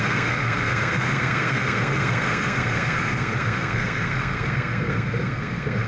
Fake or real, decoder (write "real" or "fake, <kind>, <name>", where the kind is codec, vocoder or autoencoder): fake, codec, SNAC